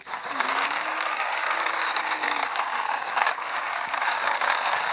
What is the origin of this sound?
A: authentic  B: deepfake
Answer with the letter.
B